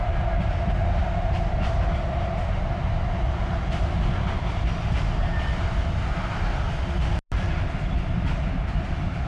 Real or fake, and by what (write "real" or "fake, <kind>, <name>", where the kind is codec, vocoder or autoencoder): real